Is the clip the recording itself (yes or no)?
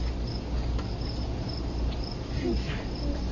yes